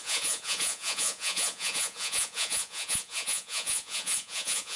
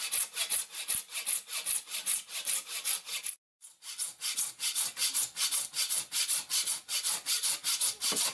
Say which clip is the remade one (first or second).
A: first